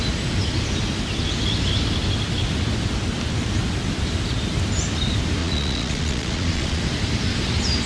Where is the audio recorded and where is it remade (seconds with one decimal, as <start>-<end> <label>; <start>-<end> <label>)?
0.0-5.4 recorded; 5.4-6.8 remade; 6.8-7.9 recorded